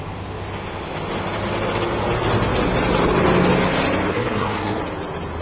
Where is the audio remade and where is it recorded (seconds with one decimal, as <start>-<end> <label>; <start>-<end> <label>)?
0.0-4.1 recorded; 4.1-4.8 remade; 4.8-5.4 recorded